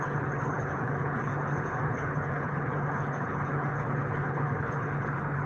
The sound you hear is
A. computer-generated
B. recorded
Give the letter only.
A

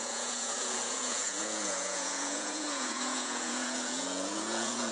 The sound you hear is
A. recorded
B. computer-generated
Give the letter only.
B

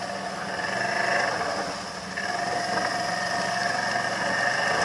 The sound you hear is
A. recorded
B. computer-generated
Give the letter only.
A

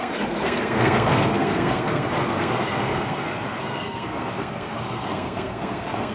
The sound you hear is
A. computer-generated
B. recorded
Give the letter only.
A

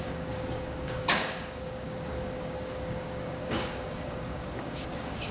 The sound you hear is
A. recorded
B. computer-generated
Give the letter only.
B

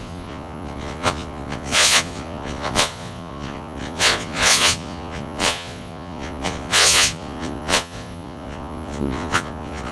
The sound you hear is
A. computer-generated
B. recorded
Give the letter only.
A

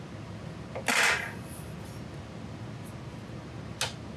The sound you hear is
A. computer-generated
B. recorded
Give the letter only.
B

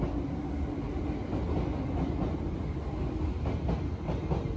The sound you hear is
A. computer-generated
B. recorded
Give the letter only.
B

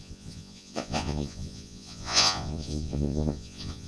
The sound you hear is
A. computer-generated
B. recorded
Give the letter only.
A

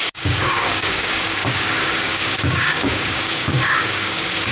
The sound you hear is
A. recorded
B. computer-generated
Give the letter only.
B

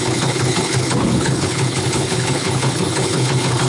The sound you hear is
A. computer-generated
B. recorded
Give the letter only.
A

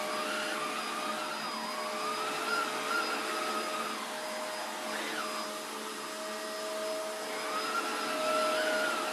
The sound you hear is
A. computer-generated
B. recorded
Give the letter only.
B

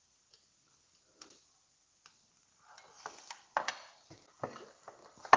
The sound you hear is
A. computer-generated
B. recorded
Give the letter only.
B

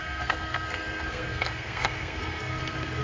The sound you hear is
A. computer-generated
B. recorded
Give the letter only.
A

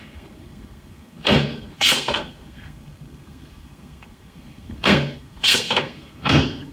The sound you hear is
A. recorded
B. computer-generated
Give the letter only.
B